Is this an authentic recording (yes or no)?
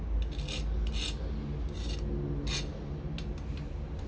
yes